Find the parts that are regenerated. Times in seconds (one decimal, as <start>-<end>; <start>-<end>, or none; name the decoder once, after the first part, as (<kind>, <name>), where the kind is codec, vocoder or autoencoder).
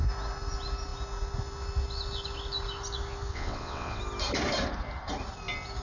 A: 3.3-4.0 (vocoder, WaveNeXt)